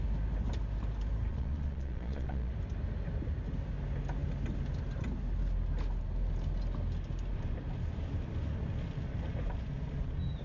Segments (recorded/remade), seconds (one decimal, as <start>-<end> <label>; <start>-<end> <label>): 0.0-1.3 recorded; 1.3-2.5 remade; 2.5-10.4 recorded